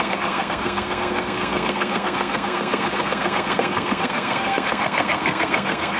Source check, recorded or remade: remade